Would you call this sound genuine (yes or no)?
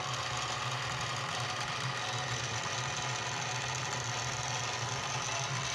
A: yes